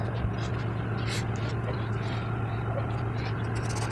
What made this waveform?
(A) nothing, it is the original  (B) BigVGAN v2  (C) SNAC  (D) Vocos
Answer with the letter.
A